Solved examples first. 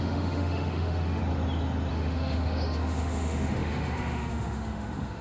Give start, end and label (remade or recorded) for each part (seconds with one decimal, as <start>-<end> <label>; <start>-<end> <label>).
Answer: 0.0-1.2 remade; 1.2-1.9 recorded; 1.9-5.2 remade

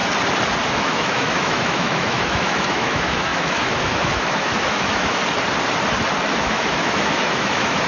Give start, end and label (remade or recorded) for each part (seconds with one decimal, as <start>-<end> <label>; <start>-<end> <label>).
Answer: 0.0-0.7 recorded; 0.7-5.2 remade; 5.2-6.4 recorded; 6.4-7.9 remade

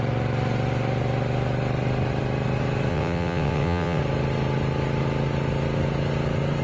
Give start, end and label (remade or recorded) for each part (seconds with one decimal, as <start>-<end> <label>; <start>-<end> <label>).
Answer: 0.0-2.9 recorded; 2.9-4.0 remade; 4.0-6.6 recorded